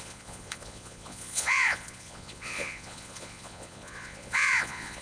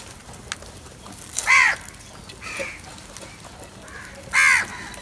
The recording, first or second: second